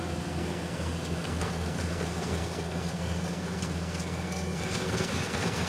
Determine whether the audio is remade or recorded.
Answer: remade